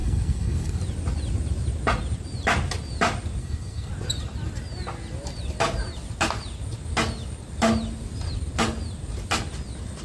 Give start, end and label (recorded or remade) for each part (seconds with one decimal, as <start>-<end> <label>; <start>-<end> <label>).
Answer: 0.0-0.8 remade; 0.8-3.4 recorded; 3.4-3.9 remade; 3.9-10.0 recorded